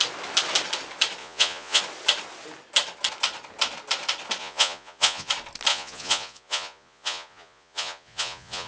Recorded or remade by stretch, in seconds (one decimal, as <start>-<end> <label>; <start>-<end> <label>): 0.0-1.2 recorded; 1.2-1.8 remade; 1.8-4.4 recorded; 4.4-5.3 remade; 5.3-5.7 recorded; 5.7-8.7 remade